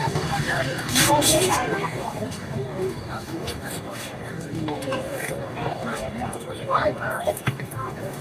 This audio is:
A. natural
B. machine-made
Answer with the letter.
B